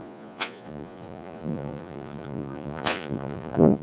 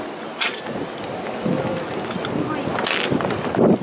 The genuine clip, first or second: second